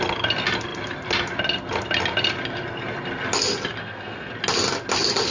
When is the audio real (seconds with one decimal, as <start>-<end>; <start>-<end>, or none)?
0.0-3.8; 4.3-5.3